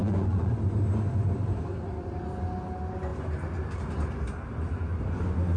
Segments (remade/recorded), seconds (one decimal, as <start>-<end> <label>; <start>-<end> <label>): 0.0-0.5 remade; 0.5-5.6 recorded